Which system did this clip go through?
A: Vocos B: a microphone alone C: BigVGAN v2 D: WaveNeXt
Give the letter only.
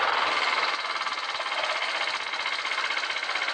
B